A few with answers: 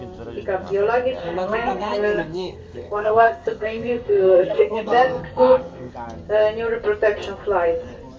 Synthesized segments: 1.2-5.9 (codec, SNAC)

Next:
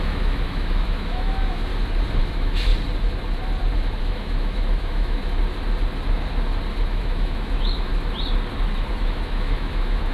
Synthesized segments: 0.0-1.7 (autoencoder, DAC-VAE); 2.2-2.7; 4.0-5.2; 6.9-7.9; 8.9-10.1

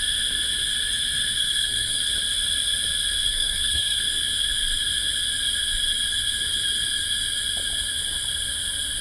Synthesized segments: 1.4-2.0 (codec, SNAC); 3.3-4.0

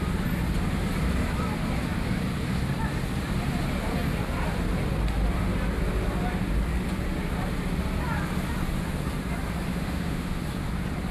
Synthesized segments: 9.7-10.4 (autoencoder, DAC-VAE)